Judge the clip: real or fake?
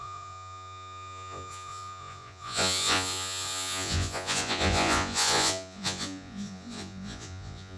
fake